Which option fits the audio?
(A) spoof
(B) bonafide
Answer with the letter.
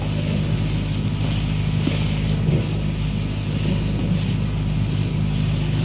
B